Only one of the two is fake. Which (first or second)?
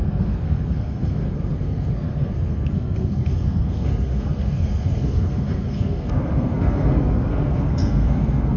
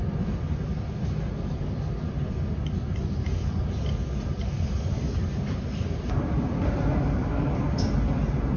first